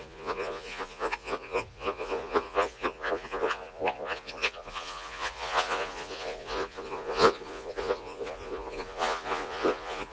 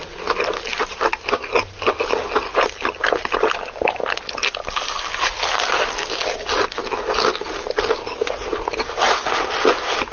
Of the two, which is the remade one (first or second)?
first